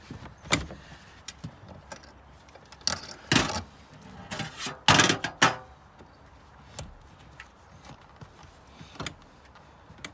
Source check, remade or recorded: recorded